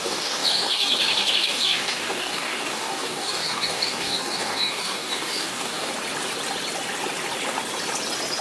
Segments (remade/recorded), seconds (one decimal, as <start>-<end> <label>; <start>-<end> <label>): 0.0-5.9 remade; 5.9-8.4 recorded